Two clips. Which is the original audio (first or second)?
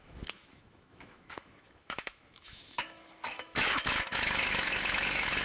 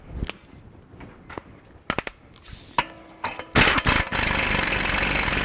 second